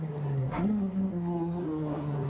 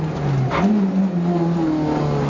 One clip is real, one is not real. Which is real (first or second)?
second